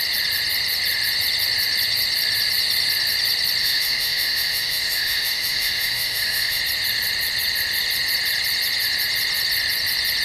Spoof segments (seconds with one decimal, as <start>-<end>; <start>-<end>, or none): 3.6-6.6